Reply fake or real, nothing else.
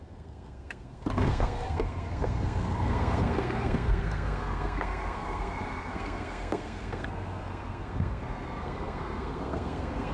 fake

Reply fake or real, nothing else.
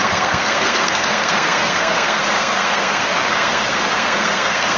fake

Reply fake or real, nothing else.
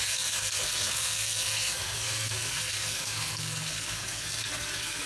fake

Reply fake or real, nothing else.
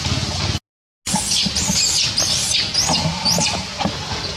real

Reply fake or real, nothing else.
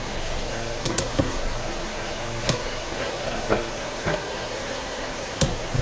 fake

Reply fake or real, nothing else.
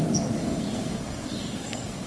fake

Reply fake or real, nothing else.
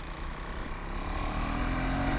real